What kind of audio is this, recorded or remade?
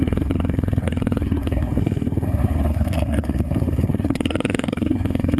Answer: remade